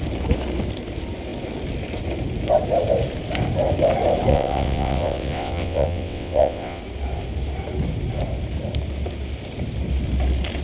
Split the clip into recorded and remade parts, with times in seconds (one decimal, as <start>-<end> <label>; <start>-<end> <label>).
0.0-4.3 recorded; 4.3-6.8 remade; 6.8-10.6 recorded